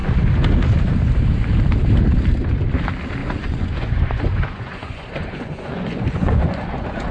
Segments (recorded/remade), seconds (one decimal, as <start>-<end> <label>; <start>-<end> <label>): 0.0-3.2 recorded; 3.2-7.1 remade